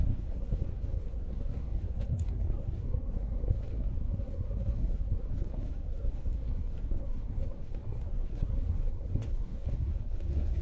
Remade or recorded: remade